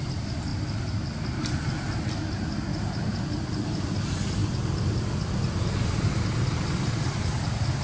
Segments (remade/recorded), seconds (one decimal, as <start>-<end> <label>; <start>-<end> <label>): 0.0-2.7 recorded; 2.7-3.2 remade; 3.2-7.8 recorded